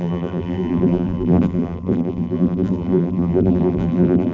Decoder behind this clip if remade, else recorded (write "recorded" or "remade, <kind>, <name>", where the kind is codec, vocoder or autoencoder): remade, vocoder, BigVGAN v2